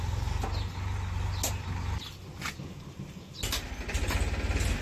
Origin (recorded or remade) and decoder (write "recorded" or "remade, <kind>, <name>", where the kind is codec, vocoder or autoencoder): recorded